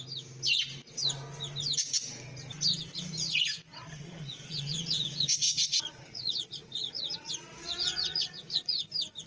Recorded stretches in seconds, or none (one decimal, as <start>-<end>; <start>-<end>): 0.0-3.7; 8.8-9.3